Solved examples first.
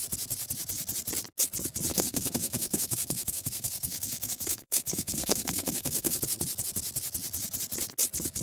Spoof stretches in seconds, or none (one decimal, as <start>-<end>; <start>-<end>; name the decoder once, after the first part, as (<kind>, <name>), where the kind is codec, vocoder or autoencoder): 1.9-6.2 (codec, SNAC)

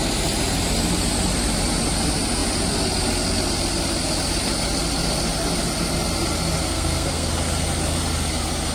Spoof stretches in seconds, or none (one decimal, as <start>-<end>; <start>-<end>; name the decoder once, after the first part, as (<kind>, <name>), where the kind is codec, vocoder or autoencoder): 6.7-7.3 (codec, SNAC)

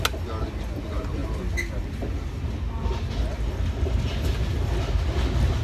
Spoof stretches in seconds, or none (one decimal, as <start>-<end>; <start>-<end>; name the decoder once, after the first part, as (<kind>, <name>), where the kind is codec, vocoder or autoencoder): none

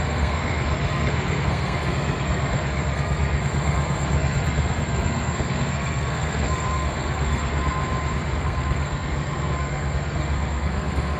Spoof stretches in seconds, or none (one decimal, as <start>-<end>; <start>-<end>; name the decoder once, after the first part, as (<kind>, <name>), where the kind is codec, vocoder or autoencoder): 0.0-7.8 (codec, SNAC); 8.4-11.2

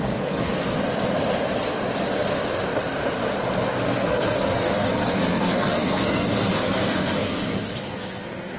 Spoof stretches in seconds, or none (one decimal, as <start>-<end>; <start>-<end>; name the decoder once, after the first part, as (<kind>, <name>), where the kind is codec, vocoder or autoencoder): 0.0-0.5 (codec, SNAC); 3.7-8.6

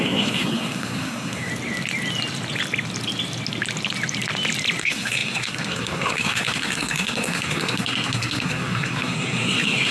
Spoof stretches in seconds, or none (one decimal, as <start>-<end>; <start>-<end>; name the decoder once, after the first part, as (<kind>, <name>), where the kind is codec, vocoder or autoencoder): 0.0-1.5 (codec, SNAC); 4.8-9.9

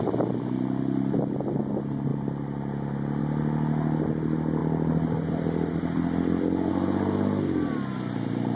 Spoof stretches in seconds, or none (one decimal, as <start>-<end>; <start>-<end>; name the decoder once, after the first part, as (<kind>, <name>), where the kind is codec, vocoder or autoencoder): none

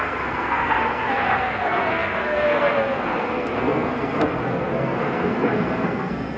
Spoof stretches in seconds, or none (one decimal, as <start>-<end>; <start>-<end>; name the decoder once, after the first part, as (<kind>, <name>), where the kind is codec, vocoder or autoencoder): 0.0-6.4 (codec, SNAC)